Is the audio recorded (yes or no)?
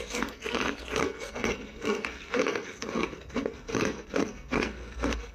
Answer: no